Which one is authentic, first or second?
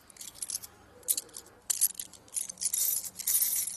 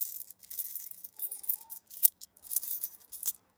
first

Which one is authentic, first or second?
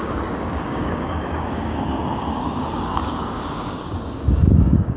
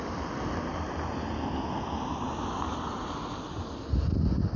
second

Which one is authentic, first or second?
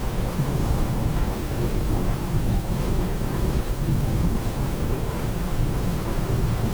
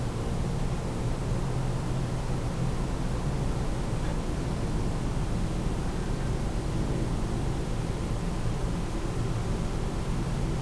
second